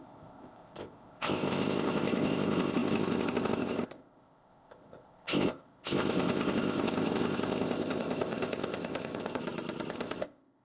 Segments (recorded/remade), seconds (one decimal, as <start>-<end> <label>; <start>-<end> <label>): 0.0-9.4 remade; 9.4-9.9 recorded; 9.9-10.6 remade